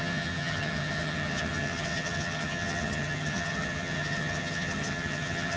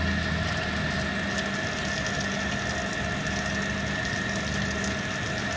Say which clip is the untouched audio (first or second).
second